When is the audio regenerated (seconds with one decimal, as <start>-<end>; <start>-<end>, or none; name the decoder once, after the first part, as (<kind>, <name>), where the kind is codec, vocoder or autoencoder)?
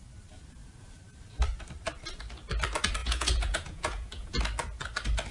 3.0-4.4 (vocoder, Vocos)